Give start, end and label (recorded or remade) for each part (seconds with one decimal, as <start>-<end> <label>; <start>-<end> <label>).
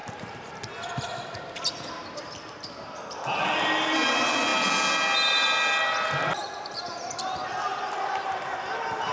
0.0-0.6 remade; 0.6-7.7 recorded; 7.7-8.4 remade; 8.4-9.1 recorded